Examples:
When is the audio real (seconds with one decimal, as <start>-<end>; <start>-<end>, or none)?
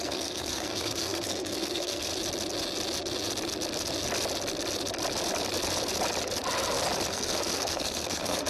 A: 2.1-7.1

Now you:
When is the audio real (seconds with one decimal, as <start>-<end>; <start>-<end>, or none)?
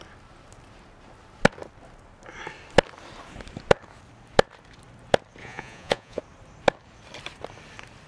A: 0.0-5.4; 6.2-8.1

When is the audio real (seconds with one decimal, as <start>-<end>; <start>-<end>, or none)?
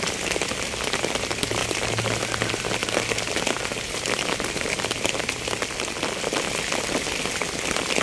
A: 0.0-8.0